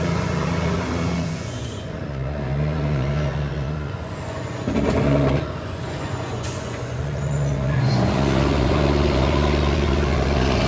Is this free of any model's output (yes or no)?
no